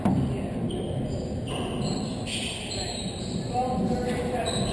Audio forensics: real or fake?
real